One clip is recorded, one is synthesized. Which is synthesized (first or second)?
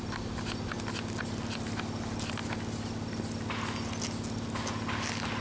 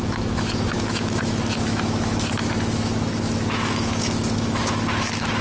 second